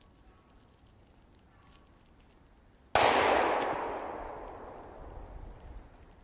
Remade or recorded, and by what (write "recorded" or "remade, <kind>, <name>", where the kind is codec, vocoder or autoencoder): recorded